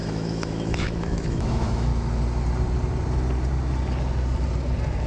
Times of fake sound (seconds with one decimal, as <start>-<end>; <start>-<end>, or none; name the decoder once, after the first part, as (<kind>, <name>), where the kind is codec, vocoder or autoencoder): 0.0-1.9 (autoencoder, DAC-VAE)